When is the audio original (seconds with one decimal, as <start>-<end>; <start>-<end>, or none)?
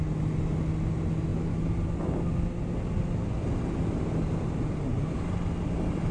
0.0-6.1